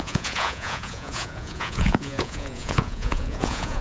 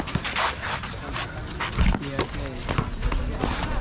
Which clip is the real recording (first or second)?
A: second